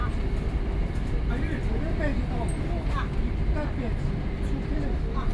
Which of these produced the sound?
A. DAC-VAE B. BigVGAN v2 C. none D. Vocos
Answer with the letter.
C